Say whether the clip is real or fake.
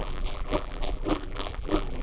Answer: fake